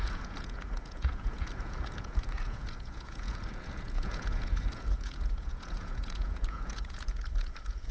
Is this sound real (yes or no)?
no